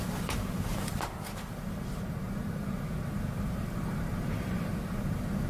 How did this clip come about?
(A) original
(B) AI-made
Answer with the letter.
B